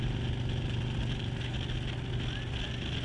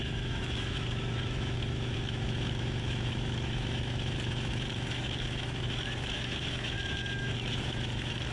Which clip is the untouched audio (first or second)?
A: first